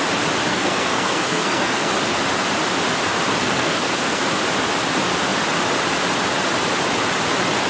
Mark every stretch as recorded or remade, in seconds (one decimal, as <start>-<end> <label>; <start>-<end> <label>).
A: 0.0-0.5 recorded; 0.5-1.9 remade; 1.9-3.4 recorded; 3.4-4.2 remade; 4.2-7.7 recorded